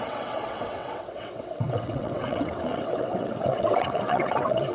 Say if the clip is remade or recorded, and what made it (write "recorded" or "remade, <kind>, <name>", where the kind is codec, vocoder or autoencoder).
remade, vocoder, WaveNeXt